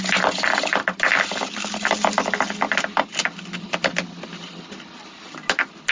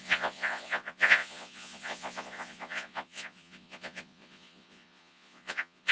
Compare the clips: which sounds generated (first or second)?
second